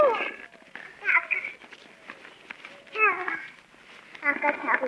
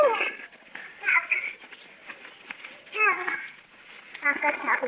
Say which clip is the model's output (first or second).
second